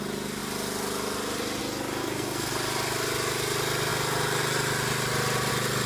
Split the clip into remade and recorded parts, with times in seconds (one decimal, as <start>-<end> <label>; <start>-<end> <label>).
0.0-2.0 recorded; 2.0-2.5 remade; 2.5-5.9 recorded